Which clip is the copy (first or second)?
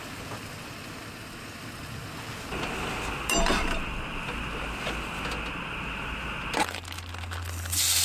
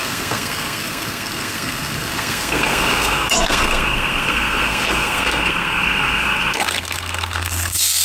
second